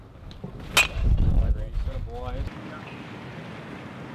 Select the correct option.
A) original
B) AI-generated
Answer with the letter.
A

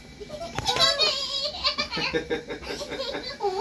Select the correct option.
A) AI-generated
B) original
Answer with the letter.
B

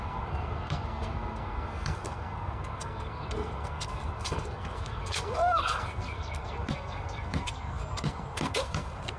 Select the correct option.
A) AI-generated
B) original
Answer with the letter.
A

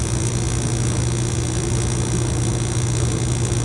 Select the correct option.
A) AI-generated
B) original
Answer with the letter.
B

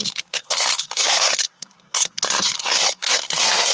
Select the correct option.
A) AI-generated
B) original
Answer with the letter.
A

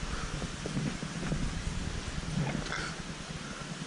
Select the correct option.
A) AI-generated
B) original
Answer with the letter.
B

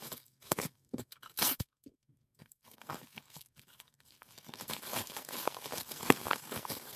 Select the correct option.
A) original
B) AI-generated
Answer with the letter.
B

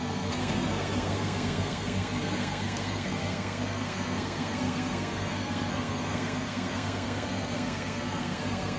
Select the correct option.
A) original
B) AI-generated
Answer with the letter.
B